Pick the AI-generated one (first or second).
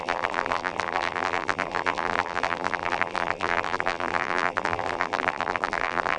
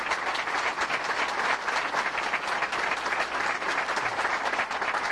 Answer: first